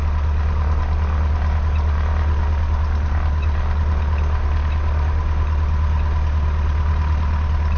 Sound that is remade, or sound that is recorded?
recorded